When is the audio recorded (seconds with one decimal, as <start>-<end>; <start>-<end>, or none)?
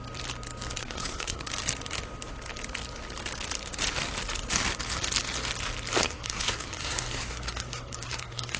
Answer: 0.0-0.8; 1.5-6.0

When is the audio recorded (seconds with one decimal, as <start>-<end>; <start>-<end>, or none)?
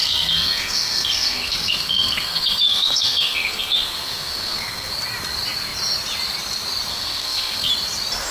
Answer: 4.9-6.9; 7.7-8.3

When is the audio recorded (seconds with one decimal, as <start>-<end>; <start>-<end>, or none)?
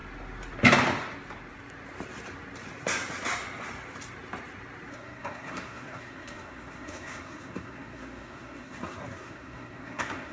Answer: 0.0-4.9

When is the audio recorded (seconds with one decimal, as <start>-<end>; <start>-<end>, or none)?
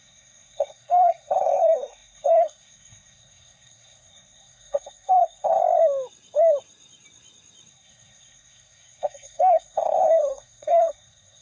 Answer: 5.6-7.7